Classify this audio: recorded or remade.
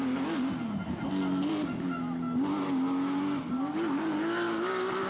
recorded